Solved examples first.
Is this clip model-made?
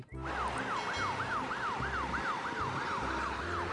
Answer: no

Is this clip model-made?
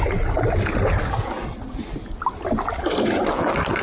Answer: no